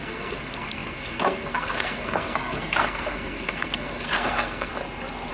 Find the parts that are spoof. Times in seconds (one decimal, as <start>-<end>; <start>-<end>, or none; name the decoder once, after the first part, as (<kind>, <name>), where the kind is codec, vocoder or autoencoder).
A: 0.0-4.7 (codec, SNAC)